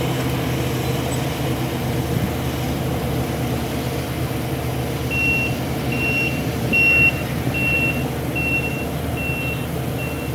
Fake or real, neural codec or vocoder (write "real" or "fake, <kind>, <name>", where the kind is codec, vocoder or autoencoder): real